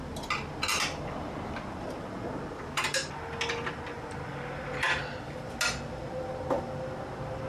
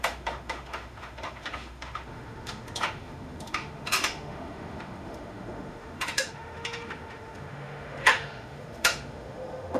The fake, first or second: second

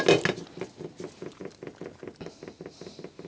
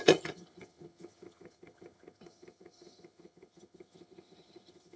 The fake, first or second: second